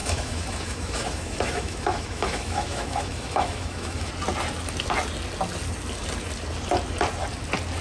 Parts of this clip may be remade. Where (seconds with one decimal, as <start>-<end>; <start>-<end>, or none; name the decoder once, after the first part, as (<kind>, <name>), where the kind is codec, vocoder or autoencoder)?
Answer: 0.0-4.1 (autoencoder, DAC-VAE)